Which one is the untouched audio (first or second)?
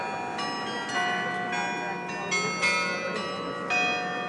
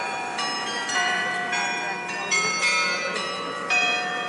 first